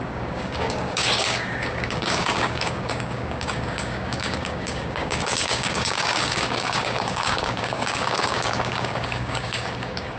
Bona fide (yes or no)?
no